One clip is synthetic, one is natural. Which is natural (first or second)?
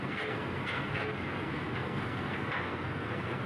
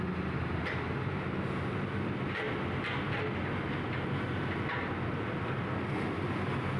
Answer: second